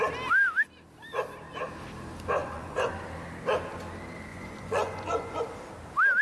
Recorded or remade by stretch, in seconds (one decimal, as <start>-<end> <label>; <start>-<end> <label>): 0.0-2.4 recorded; 2.4-2.9 remade; 2.9-4.3 recorded; 4.3-5.4 remade; 5.4-6.2 recorded